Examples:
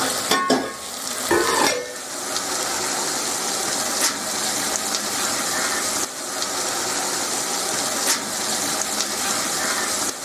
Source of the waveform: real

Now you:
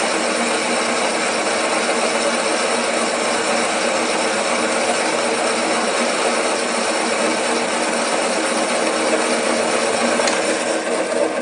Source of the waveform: real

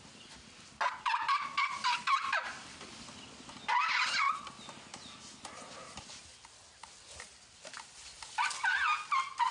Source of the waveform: real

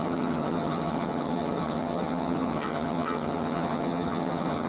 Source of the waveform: fake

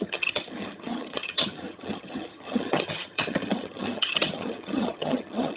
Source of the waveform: fake